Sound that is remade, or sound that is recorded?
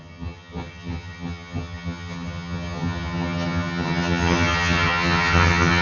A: remade